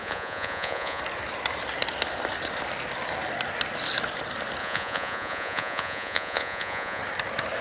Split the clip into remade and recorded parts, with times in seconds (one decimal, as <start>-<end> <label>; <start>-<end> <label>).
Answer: 0.0-1.0 remade; 1.0-4.6 recorded; 4.6-7.0 remade; 7.0-7.6 recorded